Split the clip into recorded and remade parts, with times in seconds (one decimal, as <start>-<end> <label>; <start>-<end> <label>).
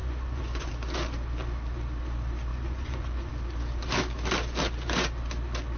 0.0-0.7 remade; 0.7-2.5 recorded; 2.5-3.3 remade; 3.3-5.8 recorded